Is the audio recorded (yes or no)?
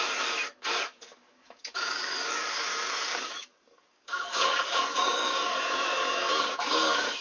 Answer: no